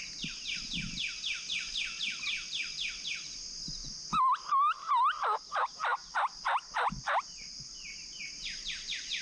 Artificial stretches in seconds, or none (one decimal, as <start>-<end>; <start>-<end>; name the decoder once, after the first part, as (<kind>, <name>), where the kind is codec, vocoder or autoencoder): none